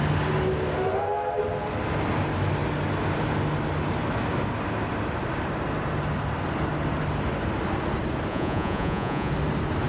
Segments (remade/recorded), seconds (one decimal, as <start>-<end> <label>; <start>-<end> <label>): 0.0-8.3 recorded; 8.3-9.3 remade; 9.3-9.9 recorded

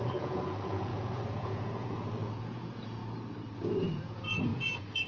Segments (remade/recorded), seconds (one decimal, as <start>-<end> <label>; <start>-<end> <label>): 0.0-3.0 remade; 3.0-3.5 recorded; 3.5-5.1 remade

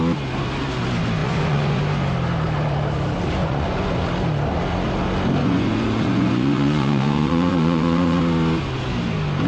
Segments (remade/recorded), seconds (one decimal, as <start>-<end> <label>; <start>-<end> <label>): 0.0-1.2 recorded; 1.2-1.8 remade; 1.8-3.4 recorded; 3.4-3.9 remade; 3.9-5.4 recorded; 5.4-8.2 remade; 8.2-9.5 recorded

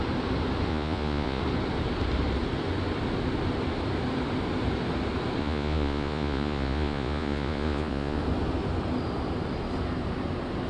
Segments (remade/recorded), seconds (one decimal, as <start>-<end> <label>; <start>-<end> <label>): 0.0-0.7 recorded; 0.7-1.4 remade; 1.4-5.4 recorded; 5.4-8.2 remade; 8.2-10.7 recorded

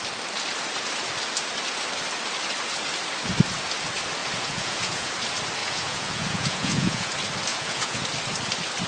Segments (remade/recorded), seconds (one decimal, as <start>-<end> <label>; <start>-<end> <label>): 0.0-4.2 recorded; 4.2-5.1 remade; 5.1-5.6 recorded; 5.6-7.1 remade; 7.1-7.5 recorded; 7.5-8.0 remade; 8.0-8.9 recorded